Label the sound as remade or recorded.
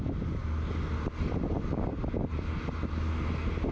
recorded